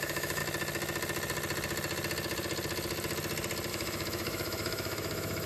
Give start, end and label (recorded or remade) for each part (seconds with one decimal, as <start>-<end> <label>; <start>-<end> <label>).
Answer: 0.0-0.4 remade; 0.4-3.7 recorded; 3.7-5.5 remade